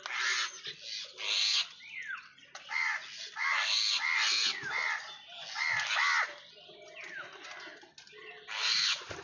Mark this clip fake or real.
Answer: real